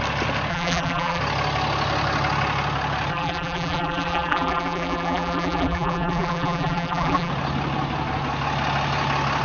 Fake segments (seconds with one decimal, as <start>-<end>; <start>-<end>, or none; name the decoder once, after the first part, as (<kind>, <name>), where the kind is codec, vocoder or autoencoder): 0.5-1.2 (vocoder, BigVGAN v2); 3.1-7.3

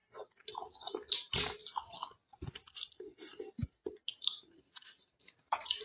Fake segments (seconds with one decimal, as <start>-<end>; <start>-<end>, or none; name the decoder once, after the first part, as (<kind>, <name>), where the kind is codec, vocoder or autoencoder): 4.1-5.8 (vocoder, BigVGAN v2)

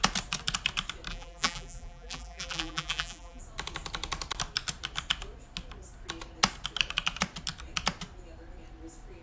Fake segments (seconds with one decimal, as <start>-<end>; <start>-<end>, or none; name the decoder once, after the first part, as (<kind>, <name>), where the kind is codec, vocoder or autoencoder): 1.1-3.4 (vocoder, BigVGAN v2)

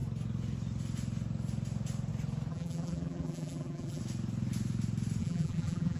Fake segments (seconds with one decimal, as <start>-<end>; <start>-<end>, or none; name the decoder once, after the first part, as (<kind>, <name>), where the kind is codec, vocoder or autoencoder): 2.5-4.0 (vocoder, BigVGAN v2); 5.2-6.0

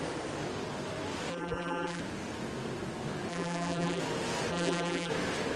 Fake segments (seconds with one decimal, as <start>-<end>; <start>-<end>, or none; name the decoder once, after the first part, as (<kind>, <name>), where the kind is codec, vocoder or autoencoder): 1.3-2.0 (vocoder, BigVGAN v2); 3.3-4.0; 4.5-5.1

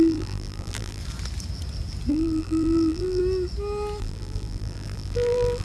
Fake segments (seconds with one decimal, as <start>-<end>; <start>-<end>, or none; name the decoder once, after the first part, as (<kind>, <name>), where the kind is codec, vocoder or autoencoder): 0.0-1.0 (vocoder, BigVGAN v2); 2.1-3.2; 4.0-5.6